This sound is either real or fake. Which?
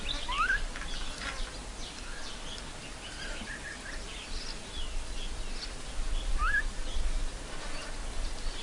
real